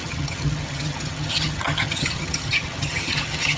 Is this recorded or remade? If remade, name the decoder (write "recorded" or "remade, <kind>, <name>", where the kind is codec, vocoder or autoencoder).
remade, vocoder, HiFi-GAN